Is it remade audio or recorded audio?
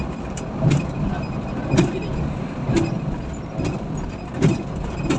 recorded